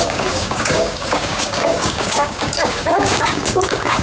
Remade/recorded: remade